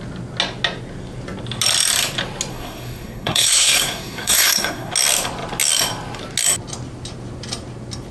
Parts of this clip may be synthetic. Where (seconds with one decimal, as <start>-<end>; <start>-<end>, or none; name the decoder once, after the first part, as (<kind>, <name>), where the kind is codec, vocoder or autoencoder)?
2.5-4.9 (codec, SNAC)